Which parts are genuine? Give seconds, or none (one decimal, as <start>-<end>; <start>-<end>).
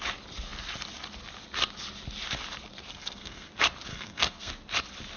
0.0-2.9; 3.5-3.9; 4.5-5.2